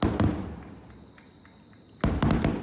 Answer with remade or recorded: recorded